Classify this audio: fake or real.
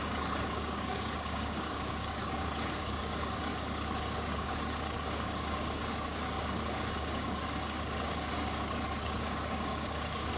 fake